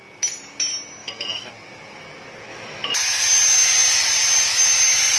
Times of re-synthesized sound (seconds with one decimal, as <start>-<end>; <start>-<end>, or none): 1.0-1.5; 2.5-3.0